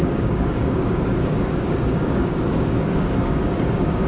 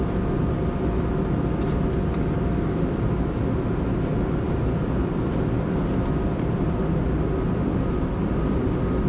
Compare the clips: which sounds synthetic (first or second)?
first